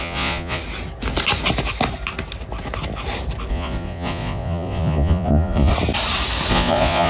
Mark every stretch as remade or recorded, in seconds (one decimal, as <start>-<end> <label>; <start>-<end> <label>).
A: 0.0-0.6 remade; 0.6-3.5 recorded; 3.5-5.7 remade; 5.7-6.5 recorded; 6.5-7.1 remade